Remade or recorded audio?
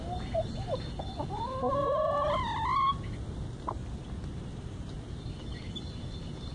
recorded